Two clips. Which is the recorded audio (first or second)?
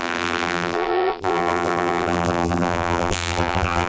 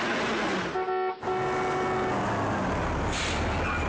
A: second